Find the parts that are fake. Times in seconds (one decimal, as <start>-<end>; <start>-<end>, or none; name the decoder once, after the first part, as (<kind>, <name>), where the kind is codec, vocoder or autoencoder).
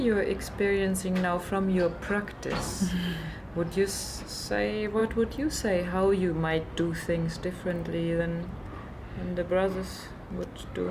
none